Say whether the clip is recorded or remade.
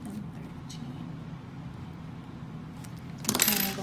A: recorded